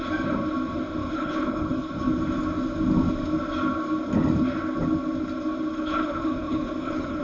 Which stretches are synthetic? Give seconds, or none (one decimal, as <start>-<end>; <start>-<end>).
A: 1.0-1.9; 5.7-7.2